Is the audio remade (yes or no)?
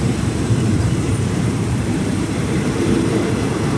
yes